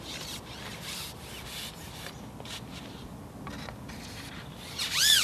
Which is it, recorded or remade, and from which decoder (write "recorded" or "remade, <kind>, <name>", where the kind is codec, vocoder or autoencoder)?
recorded